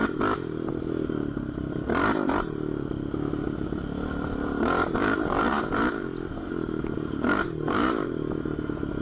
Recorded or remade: remade